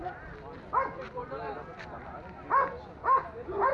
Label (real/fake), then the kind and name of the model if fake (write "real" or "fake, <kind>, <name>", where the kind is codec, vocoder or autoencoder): real